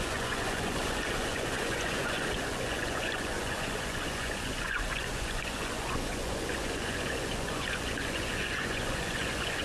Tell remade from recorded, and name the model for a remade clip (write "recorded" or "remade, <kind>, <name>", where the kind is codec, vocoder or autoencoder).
remade, vocoder, Vocos